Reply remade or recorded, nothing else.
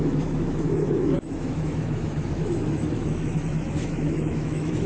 remade